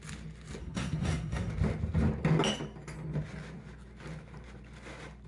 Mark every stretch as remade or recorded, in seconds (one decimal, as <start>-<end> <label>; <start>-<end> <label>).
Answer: 0.0-0.6 recorded; 0.6-1.5 remade; 1.5-5.3 recorded